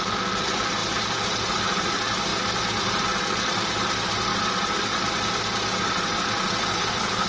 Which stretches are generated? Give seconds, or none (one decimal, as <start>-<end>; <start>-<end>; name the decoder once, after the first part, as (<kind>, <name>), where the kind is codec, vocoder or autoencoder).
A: 6.7-7.3 (codec, HILCodec)